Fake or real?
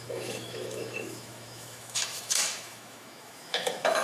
fake